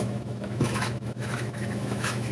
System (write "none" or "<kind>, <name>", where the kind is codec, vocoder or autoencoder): autoencoder, DAC-VAE